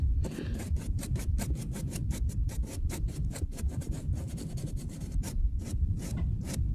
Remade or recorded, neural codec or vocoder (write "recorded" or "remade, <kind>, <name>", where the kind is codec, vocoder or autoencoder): remade, vocoder, BigVGAN v2